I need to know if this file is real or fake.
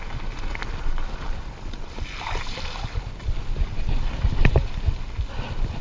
real